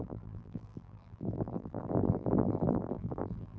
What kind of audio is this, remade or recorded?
remade